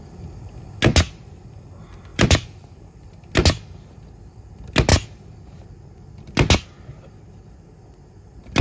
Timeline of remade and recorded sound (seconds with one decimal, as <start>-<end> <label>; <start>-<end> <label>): 0.0-2.1 recorded; 2.1-2.8 remade; 2.8-4.9 recorded; 4.9-5.7 remade; 5.7-8.6 recorded